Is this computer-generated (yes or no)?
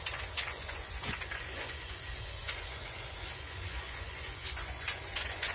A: yes